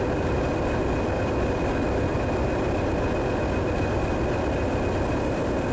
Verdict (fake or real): real